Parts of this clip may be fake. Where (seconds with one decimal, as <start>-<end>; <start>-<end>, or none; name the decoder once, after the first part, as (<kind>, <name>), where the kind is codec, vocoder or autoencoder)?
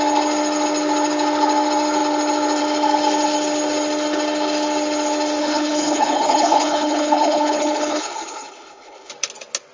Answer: 5.4-9.1 (codec, HILCodec)